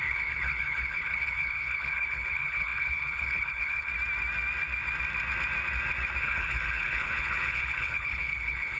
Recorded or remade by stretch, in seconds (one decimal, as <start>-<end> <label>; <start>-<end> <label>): 0.0-3.9 remade; 3.9-6.2 recorded; 6.2-8.8 remade